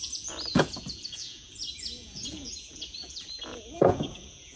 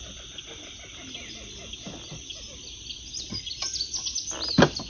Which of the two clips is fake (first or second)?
first